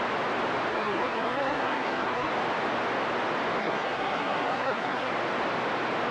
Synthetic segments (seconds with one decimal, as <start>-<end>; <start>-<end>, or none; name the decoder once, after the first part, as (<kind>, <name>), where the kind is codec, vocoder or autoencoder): 0.7-2.3 (codec, SNAC); 3.6-5.1